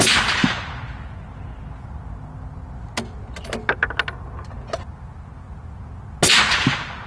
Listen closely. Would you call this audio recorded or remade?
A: recorded